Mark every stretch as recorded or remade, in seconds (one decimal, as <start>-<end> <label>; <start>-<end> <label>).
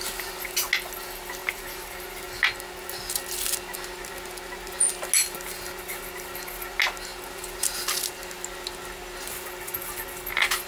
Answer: 0.0-1.4 recorded; 1.4-2.0 remade; 2.0-10.7 recorded